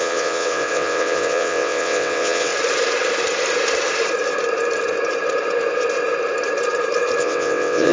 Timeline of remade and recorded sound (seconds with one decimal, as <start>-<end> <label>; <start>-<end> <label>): 0.0-2.5 remade; 2.5-7.2 recorded; 7.2-7.9 remade